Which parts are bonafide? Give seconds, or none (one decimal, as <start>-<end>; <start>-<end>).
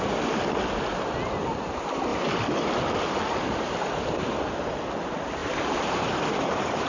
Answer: 0.0-5.4